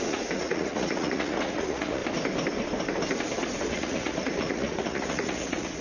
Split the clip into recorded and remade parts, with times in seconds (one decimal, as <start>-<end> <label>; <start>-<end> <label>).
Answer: 0.0-2.0 remade; 2.0-3.7 recorded; 3.7-5.8 remade